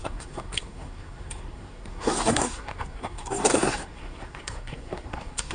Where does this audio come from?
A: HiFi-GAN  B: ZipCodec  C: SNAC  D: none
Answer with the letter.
C